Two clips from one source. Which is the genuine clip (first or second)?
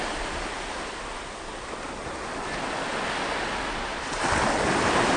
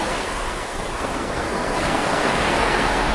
first